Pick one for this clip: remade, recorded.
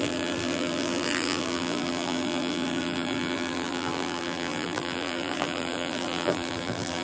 remade